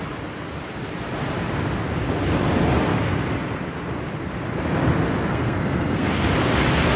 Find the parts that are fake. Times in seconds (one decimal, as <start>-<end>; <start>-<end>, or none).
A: 5.3-6.1